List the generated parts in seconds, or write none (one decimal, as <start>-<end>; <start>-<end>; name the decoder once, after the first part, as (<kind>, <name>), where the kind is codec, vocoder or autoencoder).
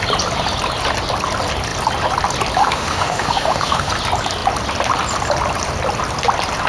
2.6-3.9 (autoencoder, DAC-VAE)